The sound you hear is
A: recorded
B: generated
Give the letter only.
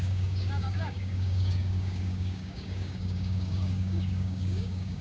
B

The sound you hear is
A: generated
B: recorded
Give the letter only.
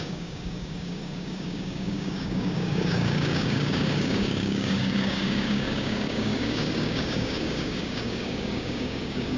A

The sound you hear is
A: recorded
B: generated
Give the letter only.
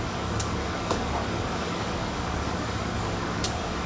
B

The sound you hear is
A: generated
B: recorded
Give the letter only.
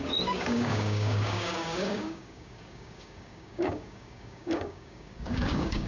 A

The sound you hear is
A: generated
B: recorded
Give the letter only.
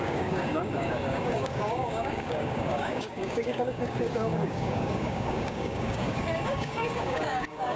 A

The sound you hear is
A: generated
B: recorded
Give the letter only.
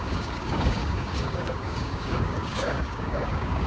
A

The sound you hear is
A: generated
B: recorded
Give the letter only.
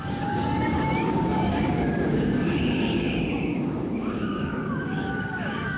A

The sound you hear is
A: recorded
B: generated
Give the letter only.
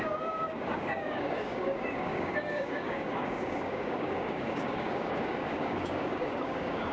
B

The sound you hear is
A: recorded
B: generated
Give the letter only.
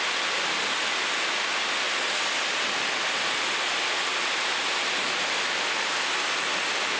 A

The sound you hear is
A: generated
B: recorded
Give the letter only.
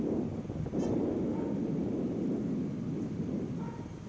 B